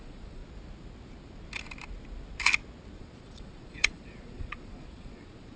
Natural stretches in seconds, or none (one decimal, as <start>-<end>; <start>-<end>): 0.4-3.0